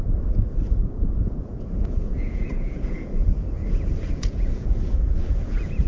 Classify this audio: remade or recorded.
remade